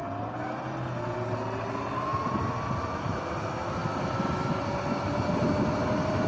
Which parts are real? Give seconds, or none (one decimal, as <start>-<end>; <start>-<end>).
0.0-6.3